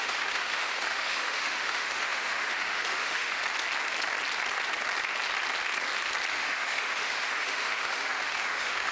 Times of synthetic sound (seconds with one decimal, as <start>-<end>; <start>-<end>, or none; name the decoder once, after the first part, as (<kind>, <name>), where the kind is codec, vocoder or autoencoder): 0.0-3.4 (autoencoder, DAC-VAE); 6.3-8.9